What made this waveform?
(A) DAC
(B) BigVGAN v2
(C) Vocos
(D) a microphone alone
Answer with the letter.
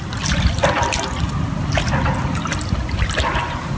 D